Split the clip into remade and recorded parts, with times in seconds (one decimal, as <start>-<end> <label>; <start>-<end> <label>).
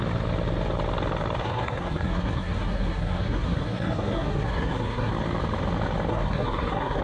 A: 0.0-1.4 recorded; 1.4-5.1 remade; 5.1-6.1 recorded; 6.1-7.0 remade